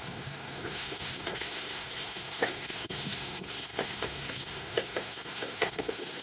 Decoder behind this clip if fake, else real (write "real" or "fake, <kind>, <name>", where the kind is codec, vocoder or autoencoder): fake, codec, SNAC